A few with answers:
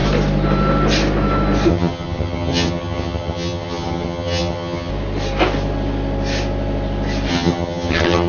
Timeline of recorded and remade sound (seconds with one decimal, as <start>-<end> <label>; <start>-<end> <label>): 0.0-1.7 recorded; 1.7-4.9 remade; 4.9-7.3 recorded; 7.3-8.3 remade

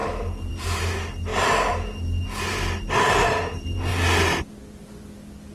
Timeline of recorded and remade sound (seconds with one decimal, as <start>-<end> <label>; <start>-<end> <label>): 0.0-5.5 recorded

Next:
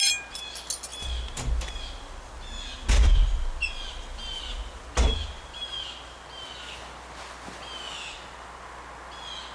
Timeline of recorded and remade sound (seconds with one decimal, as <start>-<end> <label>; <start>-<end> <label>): 0.0-9.5 recorded

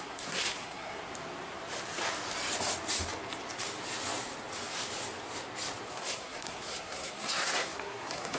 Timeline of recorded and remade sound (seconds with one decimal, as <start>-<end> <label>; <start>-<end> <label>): 0.0-1.0 remade; 1.0-5.9 recorded; 5.9-8.4 remade

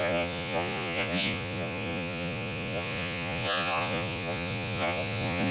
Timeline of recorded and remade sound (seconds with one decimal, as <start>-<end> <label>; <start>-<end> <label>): 0.0-5.5 remade